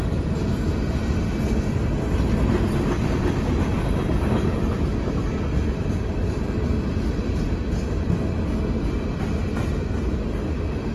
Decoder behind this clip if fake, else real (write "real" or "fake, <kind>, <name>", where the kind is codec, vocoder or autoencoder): real